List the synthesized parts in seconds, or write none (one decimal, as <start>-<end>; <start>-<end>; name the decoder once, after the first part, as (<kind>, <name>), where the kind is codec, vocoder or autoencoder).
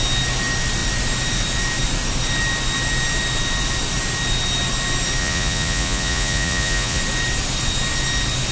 5.2-7.0 (vocoder, Vocos)